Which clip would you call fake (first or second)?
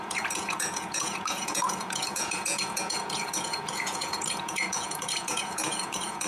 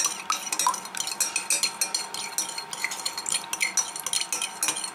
first